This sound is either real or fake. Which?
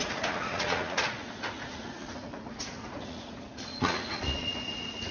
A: fake